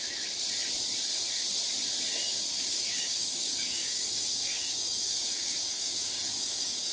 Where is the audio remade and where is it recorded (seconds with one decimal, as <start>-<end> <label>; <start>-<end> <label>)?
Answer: 0.0-2.5 recorded; 2.5-6.9 remade